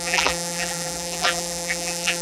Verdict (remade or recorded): remade